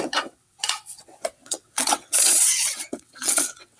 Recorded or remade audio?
remade